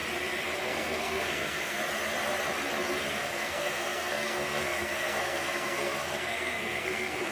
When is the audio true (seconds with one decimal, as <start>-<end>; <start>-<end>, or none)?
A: 0.0-0.6; 1.8-3.1